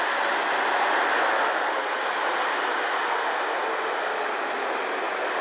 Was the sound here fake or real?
real